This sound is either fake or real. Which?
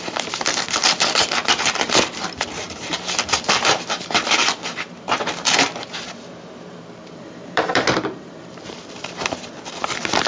fake